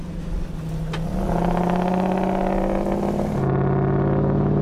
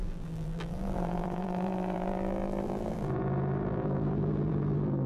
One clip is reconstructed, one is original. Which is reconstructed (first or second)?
second